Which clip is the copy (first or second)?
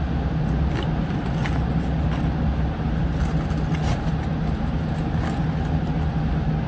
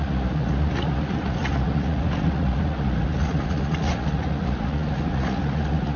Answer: second